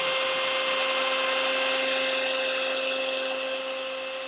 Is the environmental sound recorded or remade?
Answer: recorded